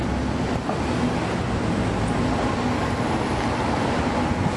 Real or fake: real